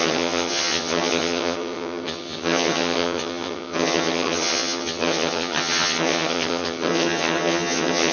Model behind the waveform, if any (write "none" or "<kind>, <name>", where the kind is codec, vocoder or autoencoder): vocoder, HiFi-GAN